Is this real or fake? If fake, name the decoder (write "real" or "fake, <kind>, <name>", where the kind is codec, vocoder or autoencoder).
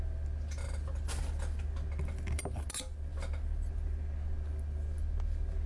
real